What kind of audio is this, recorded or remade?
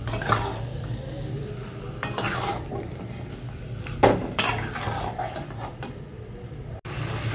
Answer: recorded